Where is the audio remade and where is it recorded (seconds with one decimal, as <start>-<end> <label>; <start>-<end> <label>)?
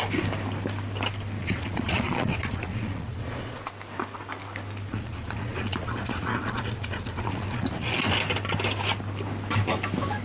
0.0-1.4 recorded; 1.4-3.7 remade; 3.7-4.9 recorded; 4.9-7.9 remade; 7.9-10.2 recorded